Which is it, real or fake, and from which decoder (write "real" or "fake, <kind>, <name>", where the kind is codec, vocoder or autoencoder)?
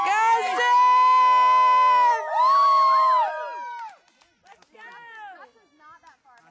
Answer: real